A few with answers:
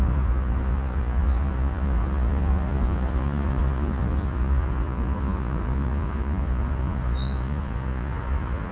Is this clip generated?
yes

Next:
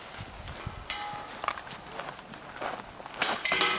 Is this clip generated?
no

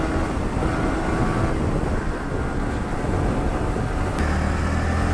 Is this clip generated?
no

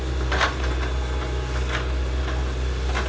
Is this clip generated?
no